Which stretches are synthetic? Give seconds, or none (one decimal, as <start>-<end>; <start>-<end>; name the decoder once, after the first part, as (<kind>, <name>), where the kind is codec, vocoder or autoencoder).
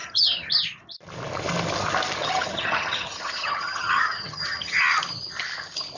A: 0.0-0.5 (vocoder, HiFi-GAN); 2.2-4.8